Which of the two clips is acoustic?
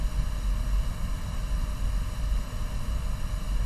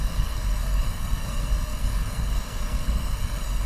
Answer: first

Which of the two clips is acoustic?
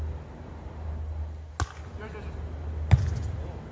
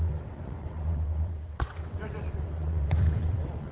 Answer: first